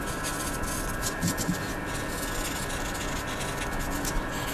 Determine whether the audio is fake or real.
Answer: real